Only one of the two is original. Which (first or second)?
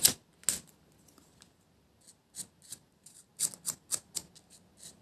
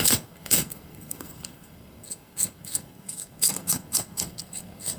first